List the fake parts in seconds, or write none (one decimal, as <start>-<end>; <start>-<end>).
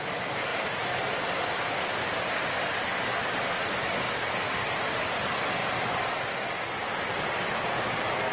0.5-1.5; 5.6-7.3